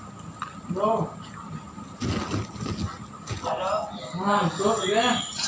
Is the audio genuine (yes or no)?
yes